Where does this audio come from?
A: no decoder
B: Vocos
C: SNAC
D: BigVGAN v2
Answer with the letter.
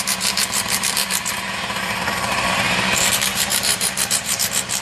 D